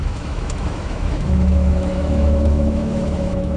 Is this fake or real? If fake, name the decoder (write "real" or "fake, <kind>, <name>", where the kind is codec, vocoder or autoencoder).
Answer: fake, autoencoder, DAC-VAE